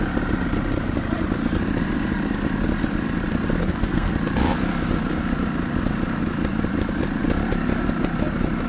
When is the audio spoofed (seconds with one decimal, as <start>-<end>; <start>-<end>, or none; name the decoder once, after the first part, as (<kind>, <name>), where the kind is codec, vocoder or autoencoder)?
3.6-4.1 (codec, SNAC)